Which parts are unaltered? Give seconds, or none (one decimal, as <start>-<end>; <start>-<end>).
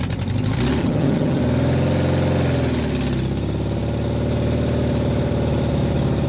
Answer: 0.0-0.8; 1.4-6.3